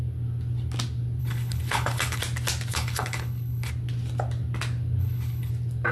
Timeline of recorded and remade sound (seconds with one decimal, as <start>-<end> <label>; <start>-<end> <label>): 0.0-1.2 recorded; 1.2-2.2 remade; 2.2-2.7 recorded; 2.7-3.7 remade; 3.7-5.0 recorded; 5.0-5.5 remade; 5.5-5.9 recorded